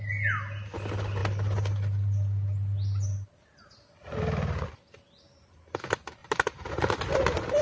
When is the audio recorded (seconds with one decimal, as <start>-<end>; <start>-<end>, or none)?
0.0-6.2; 6.9-7.6